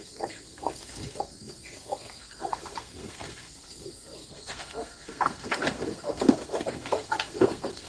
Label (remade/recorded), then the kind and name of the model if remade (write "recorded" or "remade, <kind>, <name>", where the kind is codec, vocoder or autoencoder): remade, codec, SNAC